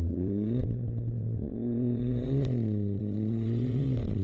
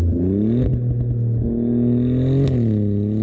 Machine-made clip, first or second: first